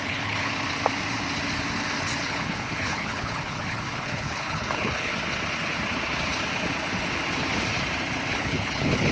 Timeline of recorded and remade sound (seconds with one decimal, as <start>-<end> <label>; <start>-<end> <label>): 0.0-0.5 remade; 0.5-2.2 recorded; 2.2-5.1 remade; 5.1-8.3 recorded; 8.3-9.1 remade